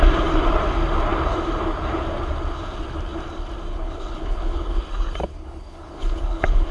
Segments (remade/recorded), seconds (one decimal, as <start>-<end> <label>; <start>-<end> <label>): 0.0-3.7 recorded; 3.7-4.8 remade; 4.8-5.3 recorded; 5.3-6.7 remade